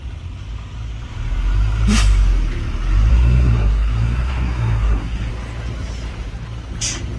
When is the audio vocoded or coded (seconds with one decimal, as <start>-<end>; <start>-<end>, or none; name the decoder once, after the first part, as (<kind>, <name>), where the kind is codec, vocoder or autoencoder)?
3.1-5.3 (codec, SNAC)